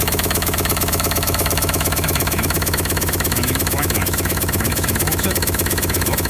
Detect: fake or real fake